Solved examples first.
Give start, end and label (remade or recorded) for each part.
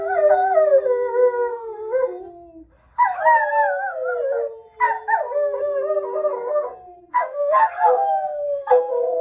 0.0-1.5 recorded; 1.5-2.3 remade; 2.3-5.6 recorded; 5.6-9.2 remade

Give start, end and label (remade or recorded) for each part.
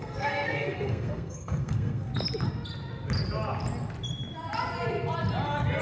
0.0-2.1 remade; 2.1-5.8 recorded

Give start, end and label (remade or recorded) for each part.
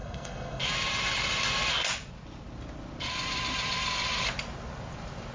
0.0-0.6 remade; 0.6-5.3 recorded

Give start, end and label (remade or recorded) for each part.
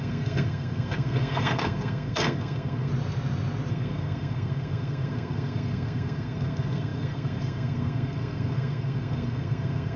0.0-2.9 remade; 2.9-3.7 recorded; 3.7-10.0 remade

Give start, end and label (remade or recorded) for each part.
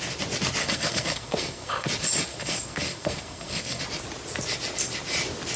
0.0-0.6 recorded; 0.6-1.9 remade; 1.9-2.3 recorded; 2.3-3.8 remade; 3.8-5.6 recorded